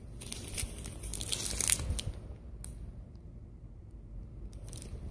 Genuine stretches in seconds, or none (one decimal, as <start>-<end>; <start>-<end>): 0.0-5.1